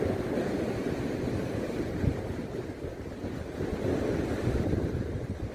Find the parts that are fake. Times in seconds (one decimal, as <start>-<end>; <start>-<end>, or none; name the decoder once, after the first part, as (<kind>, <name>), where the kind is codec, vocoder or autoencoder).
0.0-3.7 (vocoder, BigVGAN v2); 4.3-5.5